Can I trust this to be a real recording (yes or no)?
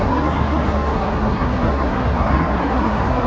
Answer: no